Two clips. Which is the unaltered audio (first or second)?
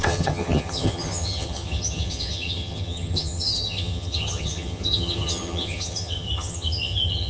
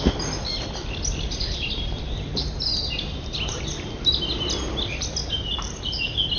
second